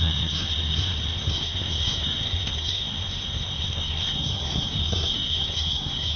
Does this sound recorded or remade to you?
remade